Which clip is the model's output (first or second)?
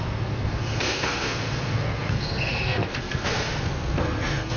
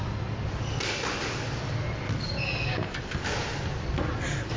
first